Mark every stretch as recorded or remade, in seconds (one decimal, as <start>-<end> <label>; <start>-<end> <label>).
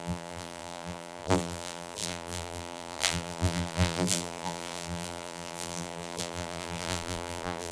0.0-7.7 remade